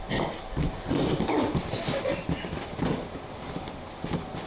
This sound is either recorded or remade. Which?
recorded